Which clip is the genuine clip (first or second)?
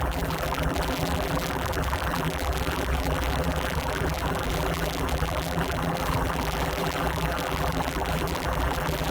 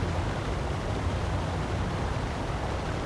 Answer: second